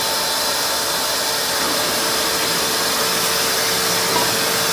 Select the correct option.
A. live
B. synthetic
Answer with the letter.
A